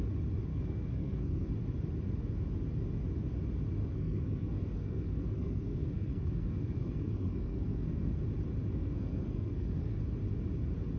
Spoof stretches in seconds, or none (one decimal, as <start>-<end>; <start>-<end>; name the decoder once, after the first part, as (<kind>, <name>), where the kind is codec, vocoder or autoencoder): 0.5-1.5 (codec, SNAC); 3.8-8.2; 8.7-10.0